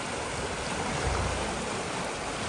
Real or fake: real